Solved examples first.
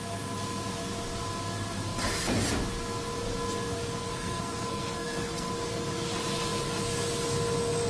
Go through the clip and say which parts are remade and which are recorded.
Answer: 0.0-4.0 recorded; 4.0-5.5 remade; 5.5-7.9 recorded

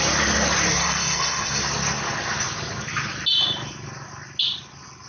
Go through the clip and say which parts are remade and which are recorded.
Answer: 0.0-0.8 recorded; 0.8-1.6 remade; 1.6-5.1 recorded

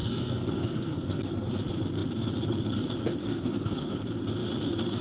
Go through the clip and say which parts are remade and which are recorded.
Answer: 0.0-1.5 remade; 1.5-3.2 recorded; 3.2-3.9 remade; 3.9-5.0 recorded